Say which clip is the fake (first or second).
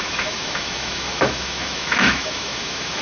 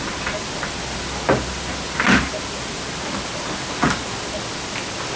first